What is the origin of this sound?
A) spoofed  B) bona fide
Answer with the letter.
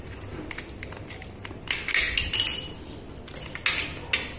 B